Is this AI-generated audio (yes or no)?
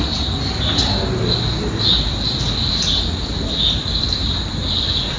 no